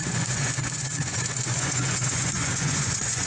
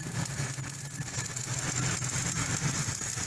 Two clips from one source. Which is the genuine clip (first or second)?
second